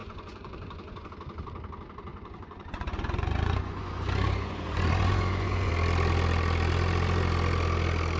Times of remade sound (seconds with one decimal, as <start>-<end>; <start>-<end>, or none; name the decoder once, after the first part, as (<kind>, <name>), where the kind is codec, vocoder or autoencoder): 0.0-1.1 (vocoder, Vocos); 2.1-5.7